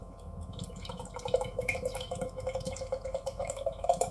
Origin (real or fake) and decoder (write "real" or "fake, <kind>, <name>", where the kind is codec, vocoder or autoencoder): fake, autoencoder, DAC-VAE